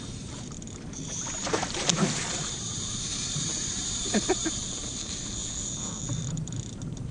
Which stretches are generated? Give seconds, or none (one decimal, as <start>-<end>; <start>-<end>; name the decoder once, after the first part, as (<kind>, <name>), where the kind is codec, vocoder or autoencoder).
0.0-7.1 (vocoder, BigVGAN v2)